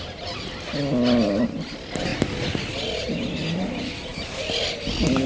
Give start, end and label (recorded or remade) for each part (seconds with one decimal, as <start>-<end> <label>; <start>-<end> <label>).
0.0-5.3 recorded